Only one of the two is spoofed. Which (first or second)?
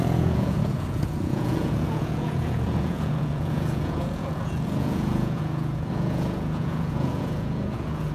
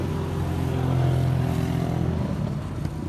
first